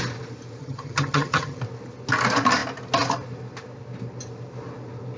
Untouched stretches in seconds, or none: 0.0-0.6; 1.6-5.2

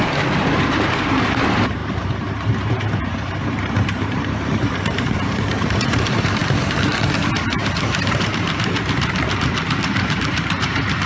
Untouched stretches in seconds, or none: 0.0-0.7; 6.4-7.0

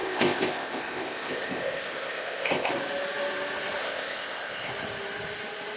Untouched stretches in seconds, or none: 2.7-3.8; 4.7-5.8

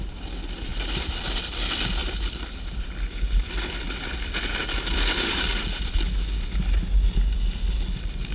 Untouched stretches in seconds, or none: 0.0-8.3